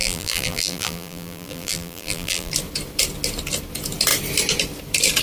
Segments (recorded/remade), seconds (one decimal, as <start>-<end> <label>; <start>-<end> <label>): 0.0-2.5 remade; 2.5-5.2 recorded